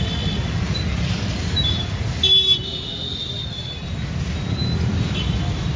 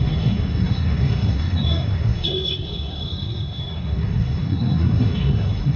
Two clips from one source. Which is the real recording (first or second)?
first